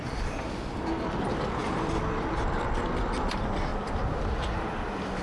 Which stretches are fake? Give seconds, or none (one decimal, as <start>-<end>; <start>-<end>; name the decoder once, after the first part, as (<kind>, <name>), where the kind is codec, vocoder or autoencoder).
none